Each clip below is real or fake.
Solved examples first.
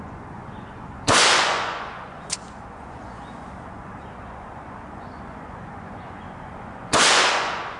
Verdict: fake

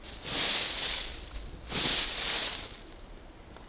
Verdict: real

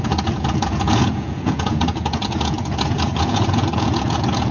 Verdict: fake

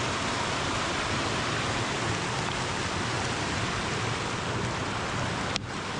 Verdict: real